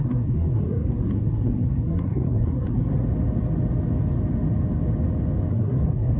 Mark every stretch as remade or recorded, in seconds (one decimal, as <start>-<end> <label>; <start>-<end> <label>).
0.0-2.8 remade; 2.8-5.5 recorded; 5.5-6.2 remade